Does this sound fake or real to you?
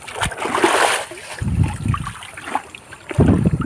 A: real